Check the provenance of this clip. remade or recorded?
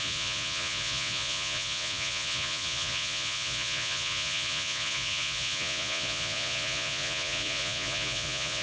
remade